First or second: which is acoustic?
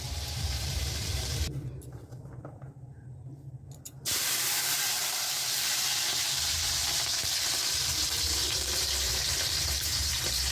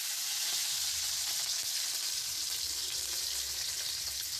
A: second